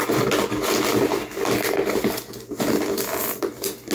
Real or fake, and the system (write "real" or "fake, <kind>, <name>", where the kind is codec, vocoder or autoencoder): real